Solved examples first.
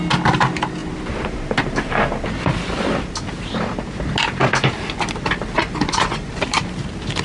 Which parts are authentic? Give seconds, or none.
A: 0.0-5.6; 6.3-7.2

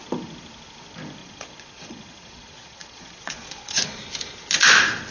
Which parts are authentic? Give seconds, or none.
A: 0.0-1.2; 4.0-5.1

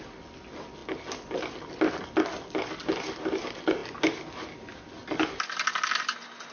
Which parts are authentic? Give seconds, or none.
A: 0.0-6.5

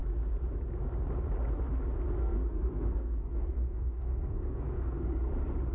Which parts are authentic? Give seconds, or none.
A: 0.0-2.2; 5.1-5.7

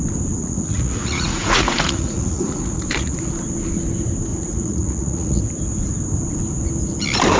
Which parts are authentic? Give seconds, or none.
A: 0.0-0.4; 3.2-4.3; 5.4-7.4

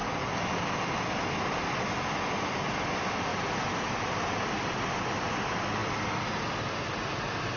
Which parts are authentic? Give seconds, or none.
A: 0.0-7.6

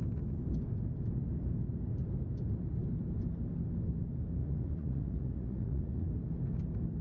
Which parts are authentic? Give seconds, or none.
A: 0.0-4.4; 6.1-7.0